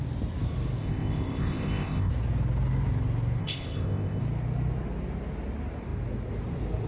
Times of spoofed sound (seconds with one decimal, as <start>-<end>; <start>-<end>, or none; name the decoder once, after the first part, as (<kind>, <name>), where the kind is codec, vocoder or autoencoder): 0.8-2.1 (codec, ZipCodec); 3.4-4.2